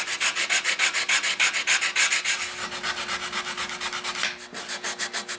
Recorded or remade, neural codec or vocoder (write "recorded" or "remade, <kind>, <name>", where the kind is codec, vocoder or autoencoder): recorded